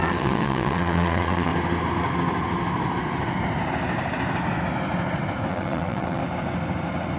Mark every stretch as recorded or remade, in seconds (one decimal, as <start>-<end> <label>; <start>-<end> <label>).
0.0-1.5 remade; 1.5-5.5 recorded; 5.5-6.2 remade; 6.2-7.2 recorded